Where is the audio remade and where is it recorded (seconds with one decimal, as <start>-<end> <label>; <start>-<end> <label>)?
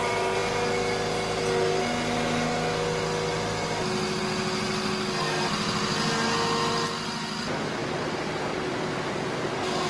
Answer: 0.0-9.9 recorded